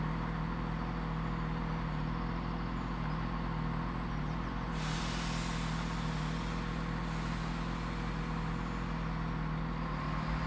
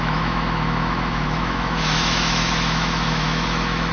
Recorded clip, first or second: first